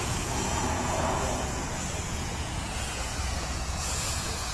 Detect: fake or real fake